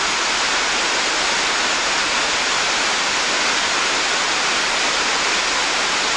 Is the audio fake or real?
real